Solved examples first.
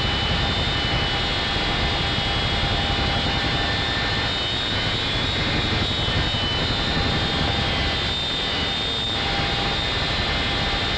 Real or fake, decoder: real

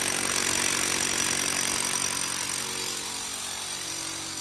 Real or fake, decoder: real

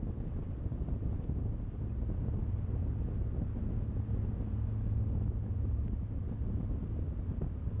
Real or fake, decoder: real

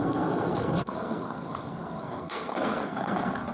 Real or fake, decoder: fake, codec, SNAC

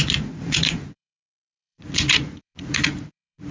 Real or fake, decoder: fake, vocoder, Vocos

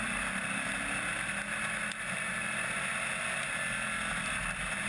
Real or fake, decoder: real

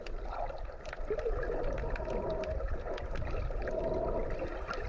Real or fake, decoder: real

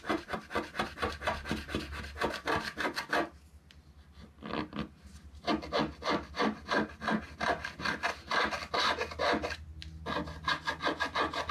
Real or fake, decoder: real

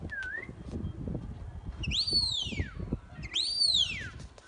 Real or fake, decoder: real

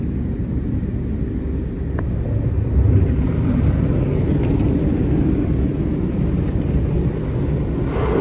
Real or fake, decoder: real